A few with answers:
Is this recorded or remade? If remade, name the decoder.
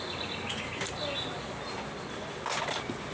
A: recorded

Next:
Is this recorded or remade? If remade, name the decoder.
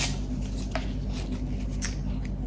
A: recorded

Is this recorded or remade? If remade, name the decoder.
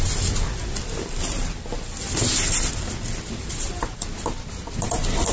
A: recorded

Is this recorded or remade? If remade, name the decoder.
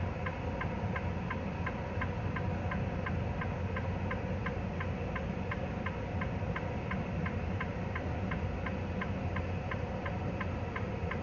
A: recorded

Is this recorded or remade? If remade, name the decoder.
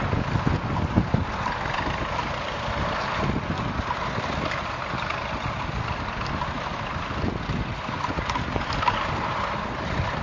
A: recorded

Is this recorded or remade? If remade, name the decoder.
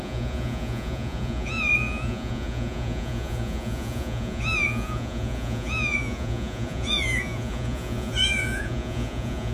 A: remade, vocoder, Vocos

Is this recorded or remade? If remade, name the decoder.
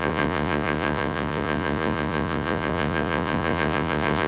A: remade, vocoder, Vocos